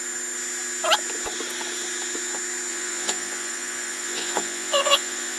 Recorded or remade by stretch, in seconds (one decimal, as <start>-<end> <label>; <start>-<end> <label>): 0.0-2.7 recorded; 2.7-5.4 remade